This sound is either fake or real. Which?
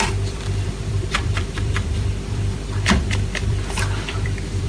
fake